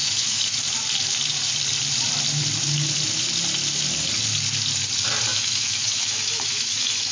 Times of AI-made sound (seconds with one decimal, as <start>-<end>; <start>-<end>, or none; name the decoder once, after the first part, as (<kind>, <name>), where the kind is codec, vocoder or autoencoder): 0.0-0.6 (autoencoder, DAC-VAE); 5.3-7.1